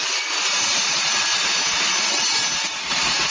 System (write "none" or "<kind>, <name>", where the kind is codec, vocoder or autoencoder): none